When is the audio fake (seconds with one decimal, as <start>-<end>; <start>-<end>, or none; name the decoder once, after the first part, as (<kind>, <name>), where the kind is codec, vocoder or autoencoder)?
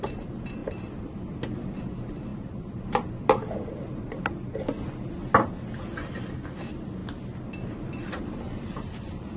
0.6-1.8 (vocoder, BigVGAN v2); 2.3-4.1